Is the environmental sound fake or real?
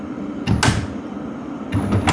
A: real